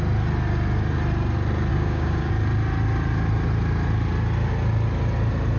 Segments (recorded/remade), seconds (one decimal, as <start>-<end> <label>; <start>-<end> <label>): 0.0-1.7 recorded; 1.7-2.3 remade; 2.3-5.6 recorded